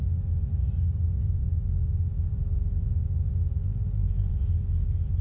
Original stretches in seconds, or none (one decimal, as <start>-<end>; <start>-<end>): 0.0-3.6; 4.3-5.2